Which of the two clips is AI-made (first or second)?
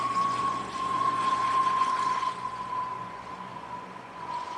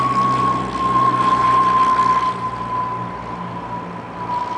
first